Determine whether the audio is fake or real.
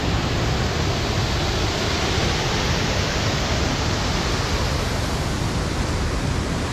real